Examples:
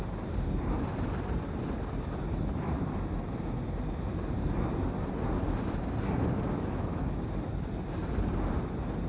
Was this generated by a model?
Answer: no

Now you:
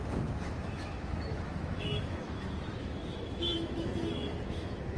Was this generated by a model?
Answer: yes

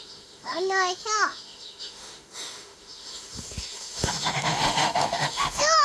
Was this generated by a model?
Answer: yes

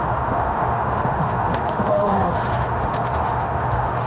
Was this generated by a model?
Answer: yes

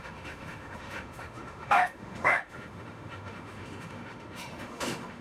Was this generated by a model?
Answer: yes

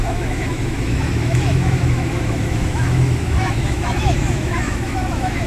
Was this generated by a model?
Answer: yes